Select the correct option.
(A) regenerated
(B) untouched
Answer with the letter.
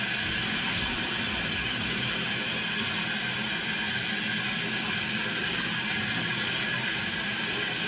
B